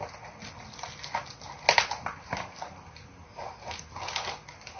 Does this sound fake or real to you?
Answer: real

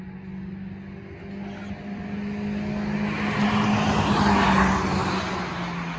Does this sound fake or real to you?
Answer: real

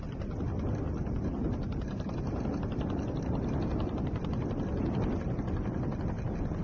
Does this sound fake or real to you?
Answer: real